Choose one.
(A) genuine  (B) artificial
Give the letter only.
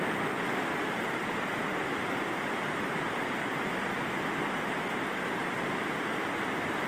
A